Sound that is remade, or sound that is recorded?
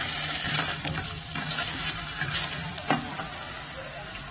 recorded